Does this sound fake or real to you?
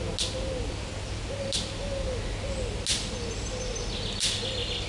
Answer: real